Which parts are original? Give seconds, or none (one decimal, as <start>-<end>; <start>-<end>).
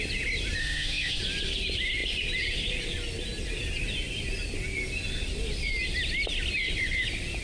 0.0-0.6; 1.2-7.4